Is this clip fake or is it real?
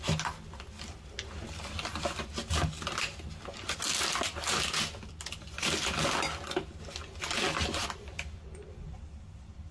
real